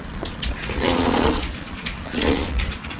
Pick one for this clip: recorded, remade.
remade